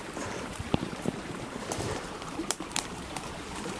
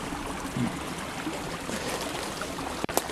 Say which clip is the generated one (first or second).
first